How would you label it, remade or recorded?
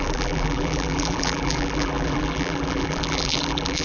remade